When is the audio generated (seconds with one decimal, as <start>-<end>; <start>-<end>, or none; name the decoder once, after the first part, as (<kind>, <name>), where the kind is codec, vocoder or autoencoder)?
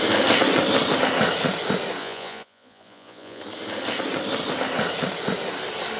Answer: 2.0-3.4 (vocoder, Vocos)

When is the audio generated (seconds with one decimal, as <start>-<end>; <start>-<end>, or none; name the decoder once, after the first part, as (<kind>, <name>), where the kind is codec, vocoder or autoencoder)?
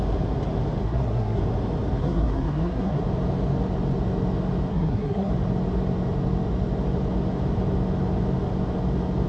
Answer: 0.8-1.4 (codec, SNAC); 2.0-3.0; 4.7-5.3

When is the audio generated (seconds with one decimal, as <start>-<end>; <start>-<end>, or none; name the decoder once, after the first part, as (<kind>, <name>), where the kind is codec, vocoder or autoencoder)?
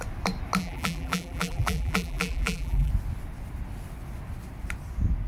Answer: 0.6-2.9 (vocoder, BigVGAN v2)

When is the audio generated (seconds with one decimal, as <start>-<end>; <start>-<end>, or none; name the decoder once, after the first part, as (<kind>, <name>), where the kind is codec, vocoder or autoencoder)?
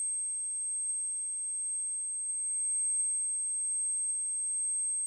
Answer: none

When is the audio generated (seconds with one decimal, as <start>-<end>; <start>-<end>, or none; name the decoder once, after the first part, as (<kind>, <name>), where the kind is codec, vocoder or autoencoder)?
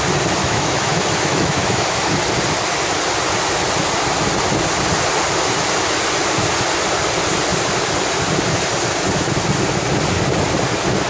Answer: 0.4-2.2 (autoencoder, DAC-VAE)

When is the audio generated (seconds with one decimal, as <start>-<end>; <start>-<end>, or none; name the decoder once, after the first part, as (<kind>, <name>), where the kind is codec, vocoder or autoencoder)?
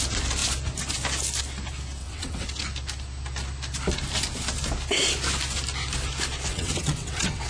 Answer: 2.0-2.6 (vocoder, WaveNeXt); 6.5-7.5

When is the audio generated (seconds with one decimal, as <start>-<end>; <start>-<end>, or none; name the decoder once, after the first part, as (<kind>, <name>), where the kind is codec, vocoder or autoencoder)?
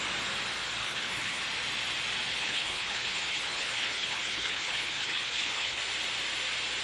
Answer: 0.8-1.4 (codec, HILCodec); 2.3-5.8